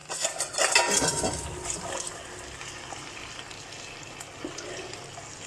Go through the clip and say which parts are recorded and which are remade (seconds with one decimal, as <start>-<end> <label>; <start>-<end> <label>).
0.0-5.5 recorded